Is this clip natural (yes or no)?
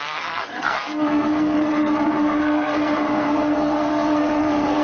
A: no